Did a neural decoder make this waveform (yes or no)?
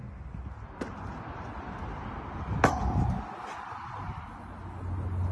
no